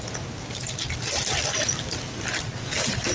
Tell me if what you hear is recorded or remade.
recorded